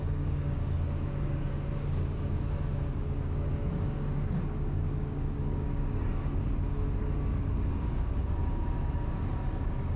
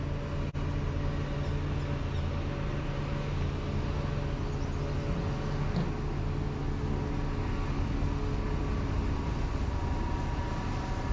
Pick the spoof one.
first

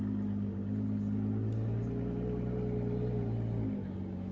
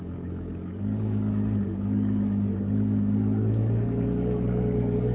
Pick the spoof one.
second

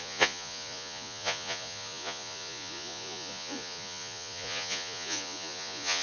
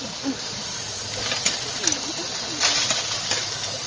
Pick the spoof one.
first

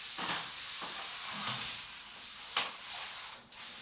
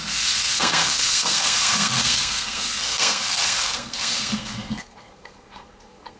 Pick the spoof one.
second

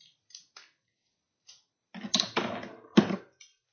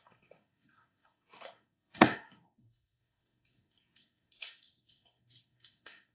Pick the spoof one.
second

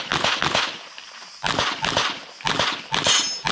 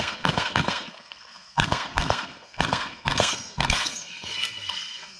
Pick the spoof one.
second